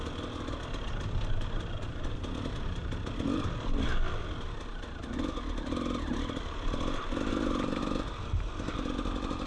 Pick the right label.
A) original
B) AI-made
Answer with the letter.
A